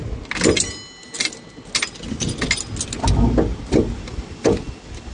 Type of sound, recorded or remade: recorded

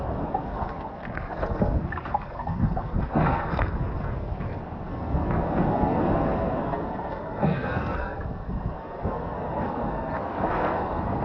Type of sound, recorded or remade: remade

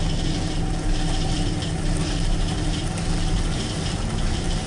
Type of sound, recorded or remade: remade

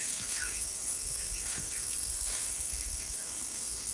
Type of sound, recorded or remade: remade